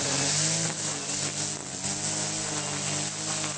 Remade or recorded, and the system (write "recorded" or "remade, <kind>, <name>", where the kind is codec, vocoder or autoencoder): recorded